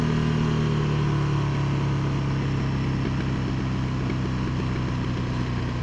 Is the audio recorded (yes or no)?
yes